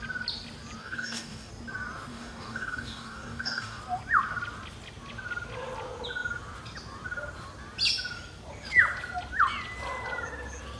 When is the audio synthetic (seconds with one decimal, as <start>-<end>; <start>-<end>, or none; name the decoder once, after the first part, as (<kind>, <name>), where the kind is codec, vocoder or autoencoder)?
0.8-1.5 (codec, DAC); 2.1-3.8